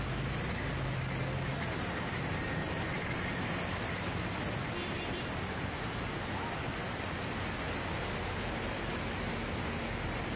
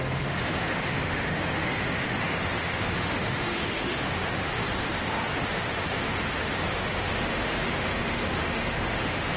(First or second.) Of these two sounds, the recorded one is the first